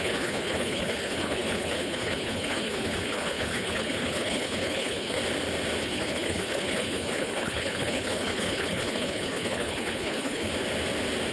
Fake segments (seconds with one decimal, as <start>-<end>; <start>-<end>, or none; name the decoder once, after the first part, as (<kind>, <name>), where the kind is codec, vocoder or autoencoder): 0.0-5.2 (codec, HILCodec); 5.8-10.5

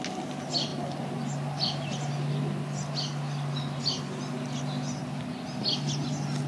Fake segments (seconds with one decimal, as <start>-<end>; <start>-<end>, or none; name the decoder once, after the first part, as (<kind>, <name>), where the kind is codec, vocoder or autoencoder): none

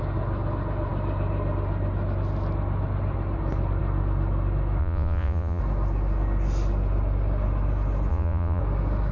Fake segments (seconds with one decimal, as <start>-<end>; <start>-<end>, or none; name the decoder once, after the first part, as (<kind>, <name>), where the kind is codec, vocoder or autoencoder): 4.8-5.6 (vocoder, Vocos); 8.1-8.6